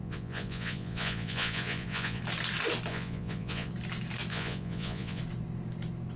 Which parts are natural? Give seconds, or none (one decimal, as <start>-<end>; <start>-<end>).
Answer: 2.2-2.9; 3.7-4.3; 5.2-6.2